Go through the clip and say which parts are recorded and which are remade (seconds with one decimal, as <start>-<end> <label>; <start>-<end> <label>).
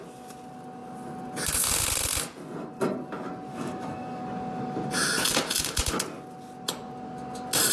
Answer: 0.0-3.5 recorded; 3.5-4.2 remade; 4.2-7.7 recorded